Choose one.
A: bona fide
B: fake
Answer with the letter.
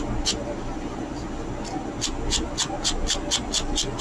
A